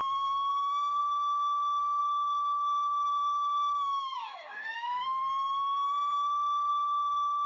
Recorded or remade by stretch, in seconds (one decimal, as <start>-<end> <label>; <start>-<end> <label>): 0.0-1.0 remade; 1.0-2.0 recorded; 2.0-5.2 remade; 5.2-6.7 recorded; 6.7-7.5 remade